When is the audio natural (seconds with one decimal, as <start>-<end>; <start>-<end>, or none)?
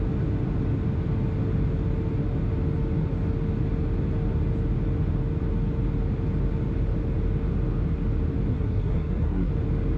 0.0-8.5; 9.5-10.0